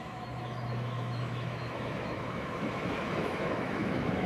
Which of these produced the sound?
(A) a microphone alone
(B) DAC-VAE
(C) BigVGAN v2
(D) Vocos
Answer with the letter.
B